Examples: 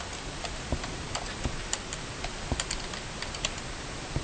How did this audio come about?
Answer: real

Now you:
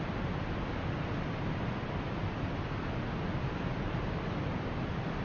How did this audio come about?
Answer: real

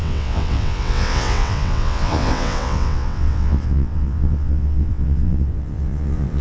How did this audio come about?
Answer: fake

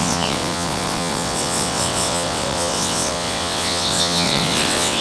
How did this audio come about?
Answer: fake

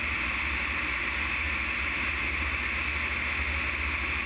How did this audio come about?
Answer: real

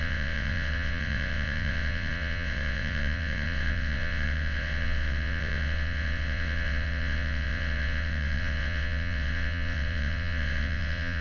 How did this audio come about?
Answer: fake